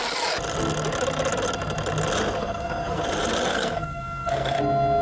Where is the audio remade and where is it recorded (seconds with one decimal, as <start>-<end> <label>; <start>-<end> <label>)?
0.0-2.4 recorded; 2.4-3.0 remade; 3.0-3.5 recorded; 3.5-4.6 remade; 4.6-5.0 recorded